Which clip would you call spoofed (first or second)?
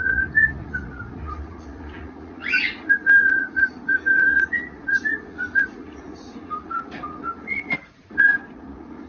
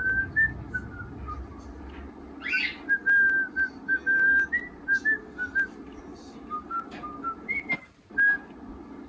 first